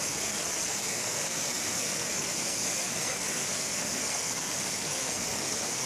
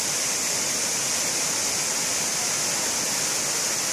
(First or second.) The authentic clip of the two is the second